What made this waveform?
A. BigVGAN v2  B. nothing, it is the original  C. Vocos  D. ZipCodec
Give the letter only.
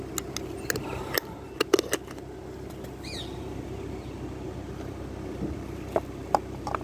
B